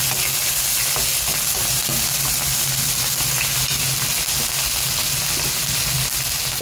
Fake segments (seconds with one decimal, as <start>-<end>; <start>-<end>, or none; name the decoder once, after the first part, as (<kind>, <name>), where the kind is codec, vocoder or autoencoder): none

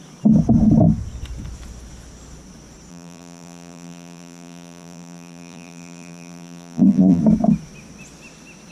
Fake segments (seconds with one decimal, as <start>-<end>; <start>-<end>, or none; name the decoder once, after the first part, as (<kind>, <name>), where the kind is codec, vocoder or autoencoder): 2.9-7.2 (vocoder, BigVGAN v2)

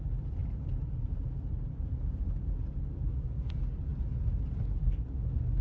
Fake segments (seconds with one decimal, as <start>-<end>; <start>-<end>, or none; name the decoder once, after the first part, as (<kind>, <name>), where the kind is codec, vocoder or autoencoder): 0.4-1.5 (vocoder, BigVGAN v2)

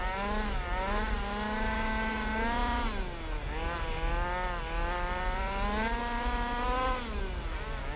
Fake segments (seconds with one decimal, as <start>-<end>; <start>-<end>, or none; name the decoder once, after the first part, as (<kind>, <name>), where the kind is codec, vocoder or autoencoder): none